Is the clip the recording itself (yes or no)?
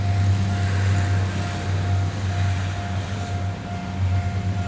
yes